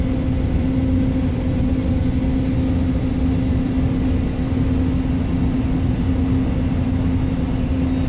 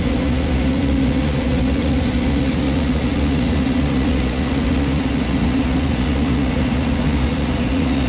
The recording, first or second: first